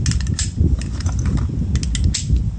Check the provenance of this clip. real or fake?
real